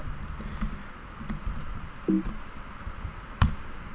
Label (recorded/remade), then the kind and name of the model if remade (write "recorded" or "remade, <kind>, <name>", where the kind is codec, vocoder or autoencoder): recorded